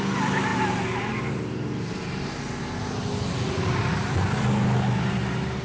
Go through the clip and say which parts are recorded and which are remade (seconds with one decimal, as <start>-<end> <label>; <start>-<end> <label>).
0.0-5.6 recorded